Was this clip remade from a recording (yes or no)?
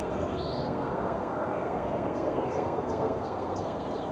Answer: yes